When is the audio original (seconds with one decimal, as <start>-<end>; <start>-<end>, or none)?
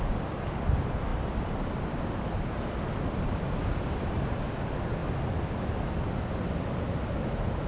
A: 0.0-7.7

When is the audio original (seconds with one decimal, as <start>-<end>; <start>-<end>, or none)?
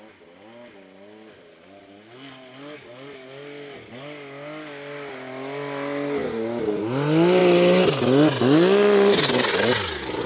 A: 0.0-10.3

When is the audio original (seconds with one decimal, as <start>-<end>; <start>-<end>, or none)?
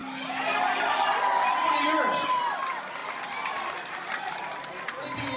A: 0.0-5.4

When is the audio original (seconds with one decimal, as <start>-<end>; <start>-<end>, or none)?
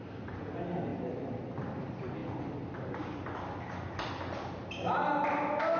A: 0.0-5.8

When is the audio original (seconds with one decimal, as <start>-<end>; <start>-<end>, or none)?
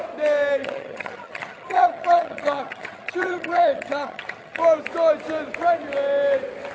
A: 0.0-0.6; 4.6-6.7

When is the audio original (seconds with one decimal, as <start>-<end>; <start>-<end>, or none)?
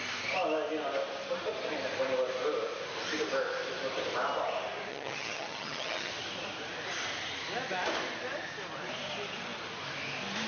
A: 0.0-4.9; 6.1-10.5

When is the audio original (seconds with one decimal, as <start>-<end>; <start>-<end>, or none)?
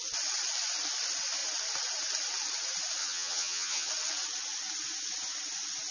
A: 0.0-3.0; 3.9-5.9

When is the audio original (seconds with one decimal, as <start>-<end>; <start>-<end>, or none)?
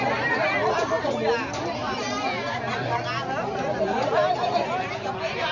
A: 0.0-5.5